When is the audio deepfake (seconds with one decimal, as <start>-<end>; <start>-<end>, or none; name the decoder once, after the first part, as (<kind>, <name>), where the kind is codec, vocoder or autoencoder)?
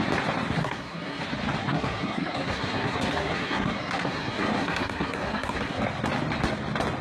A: 0.6-1.2 (codec, SNAC); 1.6-5.8